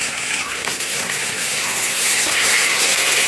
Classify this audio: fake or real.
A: fake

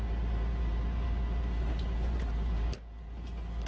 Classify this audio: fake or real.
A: real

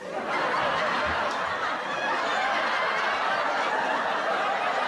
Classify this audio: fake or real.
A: real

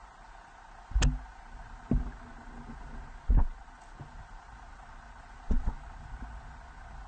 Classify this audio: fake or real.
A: real